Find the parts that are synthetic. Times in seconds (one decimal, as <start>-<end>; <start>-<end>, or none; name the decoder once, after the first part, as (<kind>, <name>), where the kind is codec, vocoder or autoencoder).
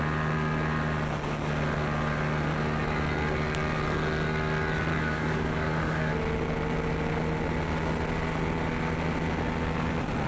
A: 4.9-6.1 (codec, DAC)